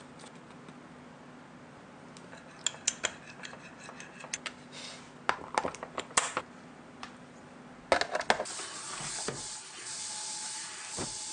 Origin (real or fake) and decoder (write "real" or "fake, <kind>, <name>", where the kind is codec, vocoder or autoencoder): real